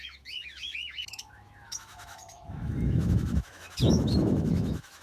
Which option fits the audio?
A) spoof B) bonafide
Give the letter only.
A